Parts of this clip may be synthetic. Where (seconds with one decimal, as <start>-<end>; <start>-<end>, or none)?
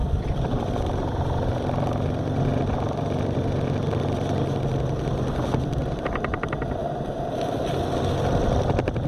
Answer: 0.0-4.6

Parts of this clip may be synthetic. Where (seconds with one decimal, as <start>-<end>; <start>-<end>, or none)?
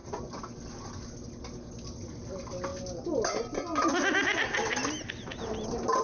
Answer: none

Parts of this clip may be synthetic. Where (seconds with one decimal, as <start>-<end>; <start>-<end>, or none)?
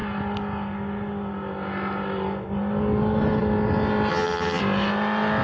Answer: 4.1-4.6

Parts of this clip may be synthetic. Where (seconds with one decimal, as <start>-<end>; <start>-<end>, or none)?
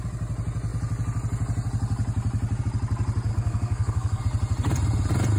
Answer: 3.3-4.2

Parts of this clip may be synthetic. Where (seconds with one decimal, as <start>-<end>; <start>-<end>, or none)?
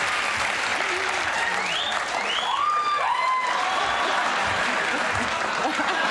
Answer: none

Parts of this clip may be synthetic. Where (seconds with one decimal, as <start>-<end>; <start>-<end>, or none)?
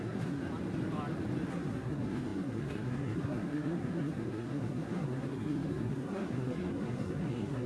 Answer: 0.0-0.4; 1.5-7.7